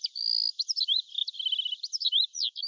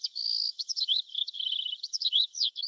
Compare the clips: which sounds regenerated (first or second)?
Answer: second